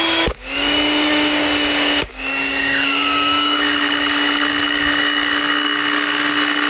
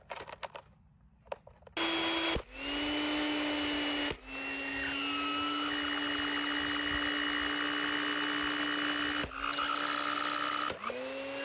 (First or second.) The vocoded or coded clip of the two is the first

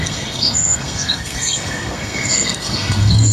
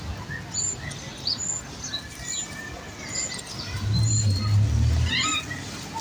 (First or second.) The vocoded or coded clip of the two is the first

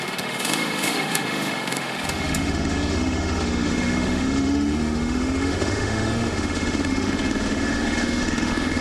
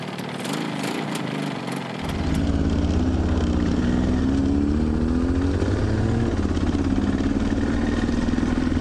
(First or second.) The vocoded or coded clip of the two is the first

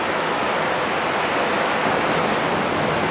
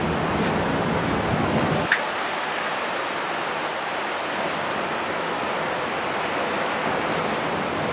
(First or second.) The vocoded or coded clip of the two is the second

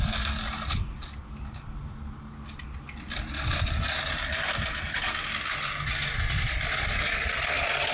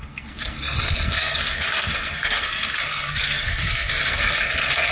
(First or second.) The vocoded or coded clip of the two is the second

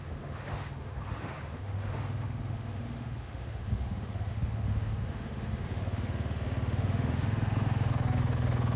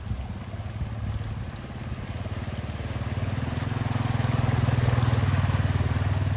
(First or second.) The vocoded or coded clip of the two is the first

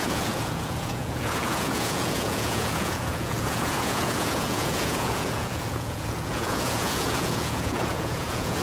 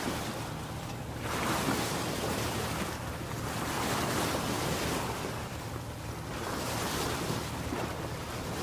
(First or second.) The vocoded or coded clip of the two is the first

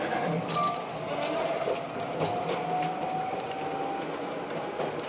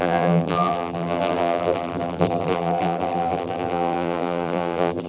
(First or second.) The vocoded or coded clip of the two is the second